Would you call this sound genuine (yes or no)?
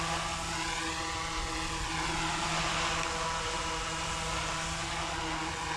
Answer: yes